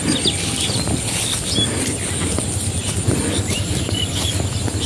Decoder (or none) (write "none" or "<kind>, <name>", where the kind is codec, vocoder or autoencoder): none